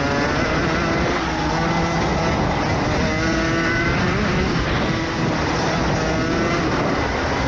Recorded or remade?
recorded